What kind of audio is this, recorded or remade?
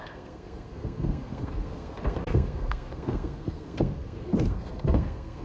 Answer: remade